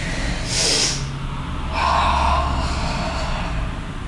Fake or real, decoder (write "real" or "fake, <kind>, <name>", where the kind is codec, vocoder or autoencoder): real